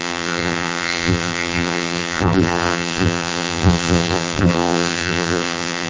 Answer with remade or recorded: remade